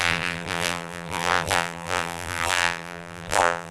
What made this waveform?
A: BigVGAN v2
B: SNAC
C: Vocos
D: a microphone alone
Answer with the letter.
A